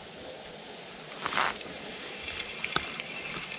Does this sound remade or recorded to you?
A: recorded